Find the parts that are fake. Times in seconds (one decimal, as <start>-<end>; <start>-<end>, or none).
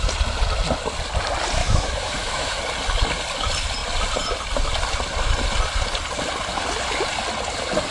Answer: 1.6-2.6